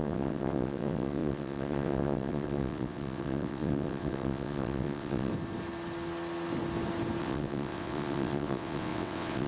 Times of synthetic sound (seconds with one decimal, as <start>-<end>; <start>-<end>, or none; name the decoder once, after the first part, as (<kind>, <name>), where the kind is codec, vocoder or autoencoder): 0.0-5.3 (vocoder, WaveNeXt); 7.2-9.5

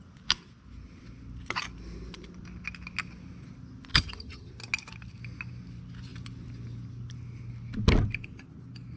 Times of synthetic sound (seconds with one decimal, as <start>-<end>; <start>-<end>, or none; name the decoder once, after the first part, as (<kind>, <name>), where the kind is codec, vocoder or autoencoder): 3.9-4.5 (vocoder, HiFi-GAN)

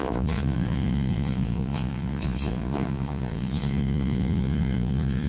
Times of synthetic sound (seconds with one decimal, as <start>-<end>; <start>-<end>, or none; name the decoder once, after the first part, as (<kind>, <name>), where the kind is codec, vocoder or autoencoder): 0.0-5.3 (vocoder, Vocos)

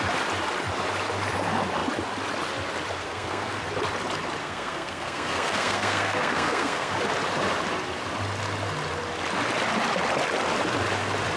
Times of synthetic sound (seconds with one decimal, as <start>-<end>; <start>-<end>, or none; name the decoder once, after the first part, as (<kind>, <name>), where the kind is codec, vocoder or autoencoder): 3.0-3.6 (codec, SNAC); 4.4-6.9

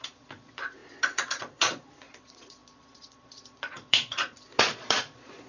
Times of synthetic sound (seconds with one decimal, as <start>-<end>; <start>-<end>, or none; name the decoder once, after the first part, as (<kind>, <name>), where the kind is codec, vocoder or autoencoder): 0.0-5.5 (vocoder, Vocos)